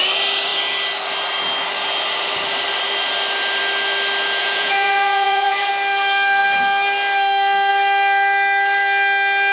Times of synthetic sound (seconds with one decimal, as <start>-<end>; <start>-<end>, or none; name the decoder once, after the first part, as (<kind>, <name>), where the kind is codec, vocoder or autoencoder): 4.4-5.7 (vocoder, Vocos)